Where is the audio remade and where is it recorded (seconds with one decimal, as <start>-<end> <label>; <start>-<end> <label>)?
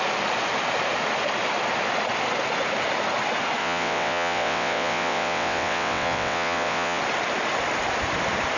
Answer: 0.0-3.6 recorded; 3.6-7.0 remade; 7.0-8.6 recorded